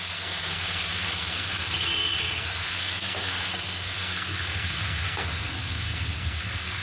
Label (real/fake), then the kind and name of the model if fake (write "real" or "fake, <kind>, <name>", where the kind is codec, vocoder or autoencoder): fake, codec, SNAC